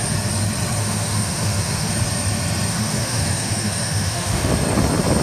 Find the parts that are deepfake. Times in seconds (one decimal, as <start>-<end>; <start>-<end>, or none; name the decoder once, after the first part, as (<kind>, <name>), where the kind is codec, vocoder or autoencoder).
0.8-1.9 (autoencoder, DAC-VAE); 2.7-4.5